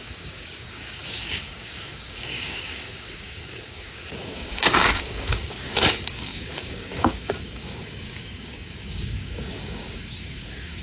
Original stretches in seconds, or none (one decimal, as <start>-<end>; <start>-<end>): none

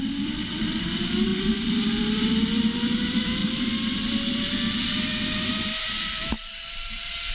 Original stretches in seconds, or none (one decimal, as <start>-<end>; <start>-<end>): none

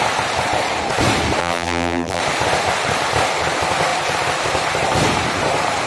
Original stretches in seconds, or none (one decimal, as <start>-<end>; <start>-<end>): 0.0-1.4; 2.2-5.9

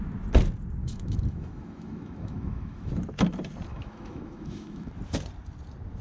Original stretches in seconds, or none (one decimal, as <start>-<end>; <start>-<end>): 0.0-0.8; 2.9-3.7; 4.9-6.0

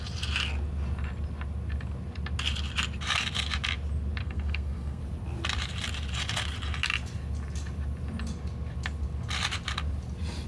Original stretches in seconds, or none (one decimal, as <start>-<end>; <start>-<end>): 0.0-4.2; 5.0-10.5

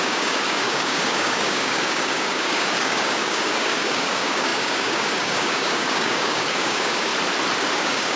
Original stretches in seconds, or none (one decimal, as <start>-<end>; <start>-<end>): 7.1-7.7

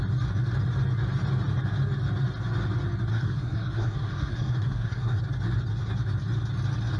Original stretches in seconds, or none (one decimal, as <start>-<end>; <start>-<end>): 0.0-3.1; 5.2-7.0